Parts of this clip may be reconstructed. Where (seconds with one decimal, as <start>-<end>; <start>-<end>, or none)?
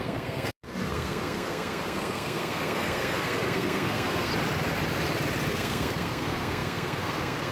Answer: 0.0-4.3; 5.5-7.5